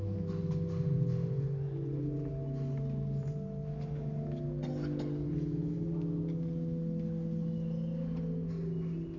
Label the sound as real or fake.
real